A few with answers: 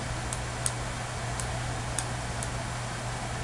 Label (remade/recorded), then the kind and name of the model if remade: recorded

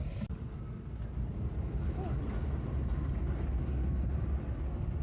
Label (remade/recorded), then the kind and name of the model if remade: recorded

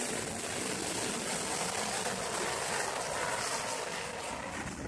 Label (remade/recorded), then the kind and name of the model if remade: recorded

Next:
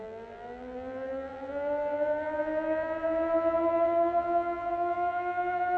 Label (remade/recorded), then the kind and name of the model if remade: remade, vocoder, BigVGAN v2